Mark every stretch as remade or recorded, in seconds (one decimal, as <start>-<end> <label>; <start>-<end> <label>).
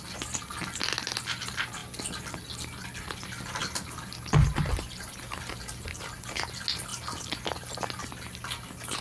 0.0-9.0 recorded